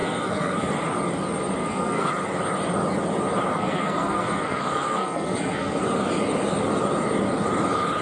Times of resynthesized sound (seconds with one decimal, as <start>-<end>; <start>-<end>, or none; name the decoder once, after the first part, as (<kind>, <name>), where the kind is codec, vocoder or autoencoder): 0.0-0.7 (codec, SNAC); 1.6-2.1; 3.5-5.8